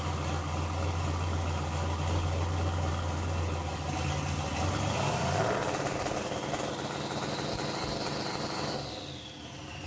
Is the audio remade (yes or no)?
no